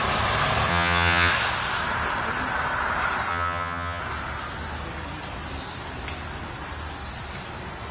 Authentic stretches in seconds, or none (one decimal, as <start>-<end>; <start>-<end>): 0.0-0.7; 1.3-3.3; 4.0-7.9